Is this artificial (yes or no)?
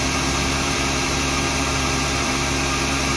yes